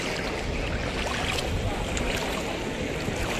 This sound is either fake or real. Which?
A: real